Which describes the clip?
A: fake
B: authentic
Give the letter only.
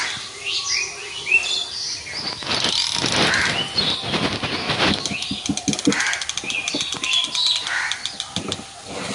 B